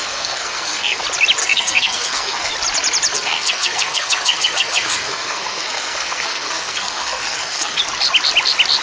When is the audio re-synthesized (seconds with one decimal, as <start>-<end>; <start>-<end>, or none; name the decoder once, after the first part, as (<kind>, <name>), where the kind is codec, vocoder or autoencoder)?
0.0-1.0 (codec, SNAC); 1.4-2.5; 3.1-7.8